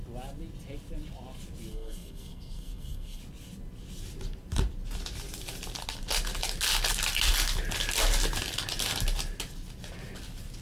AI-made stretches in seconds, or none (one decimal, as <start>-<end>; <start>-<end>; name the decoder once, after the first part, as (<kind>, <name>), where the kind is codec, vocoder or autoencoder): 1.7-3.2 (codec, SNAC)